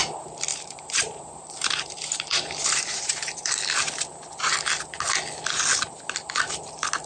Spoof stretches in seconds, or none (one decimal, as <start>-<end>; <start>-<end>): 0.5-3.5